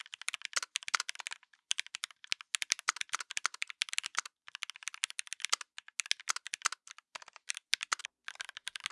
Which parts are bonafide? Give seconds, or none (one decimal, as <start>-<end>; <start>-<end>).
0.0-8.9